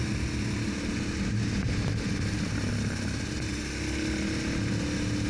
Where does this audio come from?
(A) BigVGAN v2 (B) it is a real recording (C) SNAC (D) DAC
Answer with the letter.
B